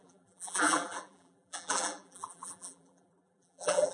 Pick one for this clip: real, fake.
fake